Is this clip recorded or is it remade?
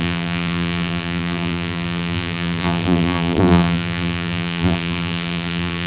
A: remade